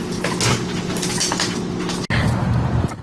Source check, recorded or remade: recorded